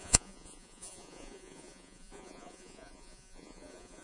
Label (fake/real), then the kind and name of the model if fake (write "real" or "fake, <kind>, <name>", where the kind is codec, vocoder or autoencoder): fake, vocoder, Vocos